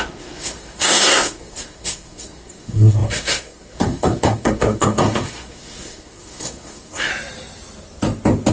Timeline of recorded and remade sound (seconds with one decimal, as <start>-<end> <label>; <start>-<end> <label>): 0.0-7.1 remade; 7.1-8.5 recorded